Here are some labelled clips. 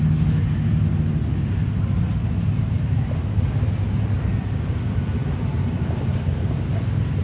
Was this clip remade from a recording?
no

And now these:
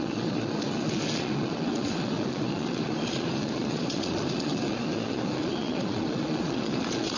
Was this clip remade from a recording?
yes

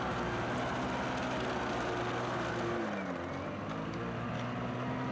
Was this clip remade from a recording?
no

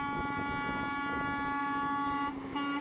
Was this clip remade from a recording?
no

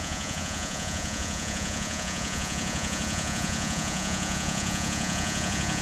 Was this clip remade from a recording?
yes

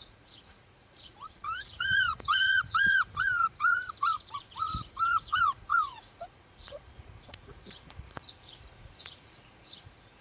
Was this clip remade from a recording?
yes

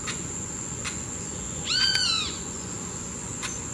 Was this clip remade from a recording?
yes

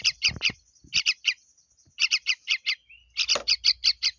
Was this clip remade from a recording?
no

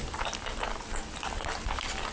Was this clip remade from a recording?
no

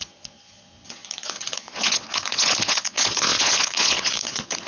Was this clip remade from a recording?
yes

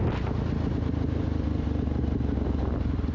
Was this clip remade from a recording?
no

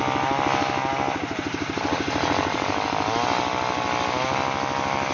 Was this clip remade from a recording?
no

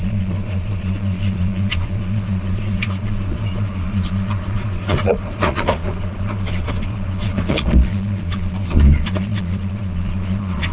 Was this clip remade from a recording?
yes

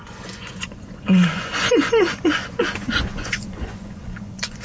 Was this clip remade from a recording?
yes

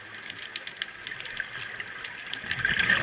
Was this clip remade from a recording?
no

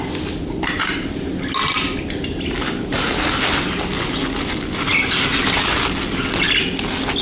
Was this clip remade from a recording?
no